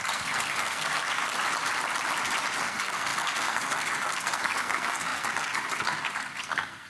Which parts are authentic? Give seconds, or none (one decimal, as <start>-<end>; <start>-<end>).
1.2-2.6